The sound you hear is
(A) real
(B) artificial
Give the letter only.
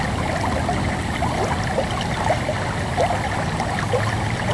A